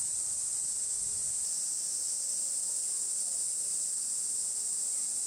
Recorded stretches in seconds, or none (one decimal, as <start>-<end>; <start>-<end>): 0.0-5.3